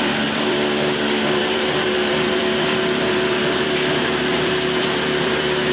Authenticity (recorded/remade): remade